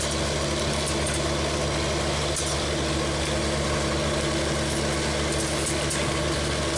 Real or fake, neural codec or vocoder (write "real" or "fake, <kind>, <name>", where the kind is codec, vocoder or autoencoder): real